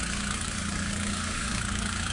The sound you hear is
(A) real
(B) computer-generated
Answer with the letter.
B